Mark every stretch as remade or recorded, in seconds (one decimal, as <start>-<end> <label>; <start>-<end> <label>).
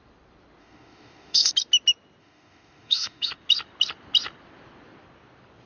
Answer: 0.0-0.6 recorded; 0.6-1.5 remade; 1.5-2.2 recorded; 2.2-3.3 remade; 3.3-5.7 recorded